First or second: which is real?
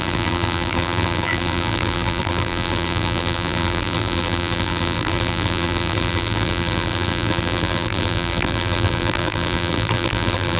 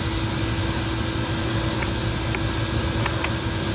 second